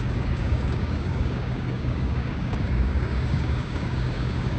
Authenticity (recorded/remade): remade